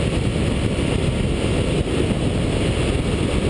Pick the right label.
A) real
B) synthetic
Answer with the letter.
A